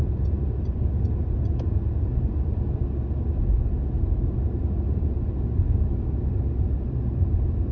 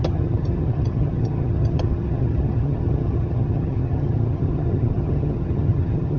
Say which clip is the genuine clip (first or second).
first